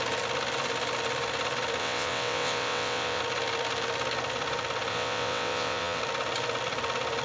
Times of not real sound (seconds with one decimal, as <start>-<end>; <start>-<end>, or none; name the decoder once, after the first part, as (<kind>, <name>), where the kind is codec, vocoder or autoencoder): 1.8-3.2 (vocoder, WaveNeXt); 4.9-6.0